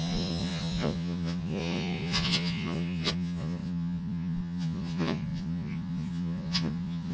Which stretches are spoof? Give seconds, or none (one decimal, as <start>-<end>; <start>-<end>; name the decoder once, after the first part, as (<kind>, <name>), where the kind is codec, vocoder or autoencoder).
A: 0.0-7.1 (vocoder, Vocos)